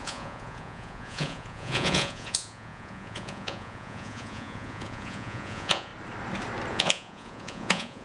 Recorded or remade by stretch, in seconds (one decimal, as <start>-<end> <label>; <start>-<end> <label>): 0.0-5.9 remade; 5.9-6.7 recorded; 6.7-8.0 remade